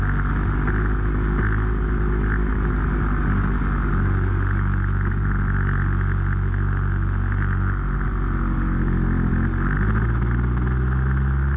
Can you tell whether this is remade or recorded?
recorded